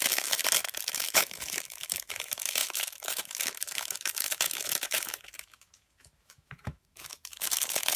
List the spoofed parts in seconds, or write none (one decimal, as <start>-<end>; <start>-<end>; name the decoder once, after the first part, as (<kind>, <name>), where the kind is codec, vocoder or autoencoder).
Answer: 0.0-0.4 (autoencoder, DAC-VAE); 0.9-8.0